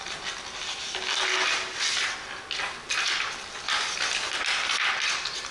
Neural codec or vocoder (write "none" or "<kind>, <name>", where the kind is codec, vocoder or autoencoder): none